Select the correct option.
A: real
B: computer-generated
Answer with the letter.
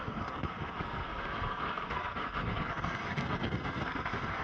B